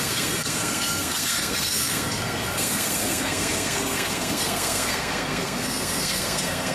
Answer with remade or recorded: remade